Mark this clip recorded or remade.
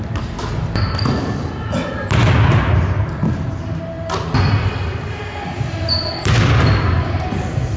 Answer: recorded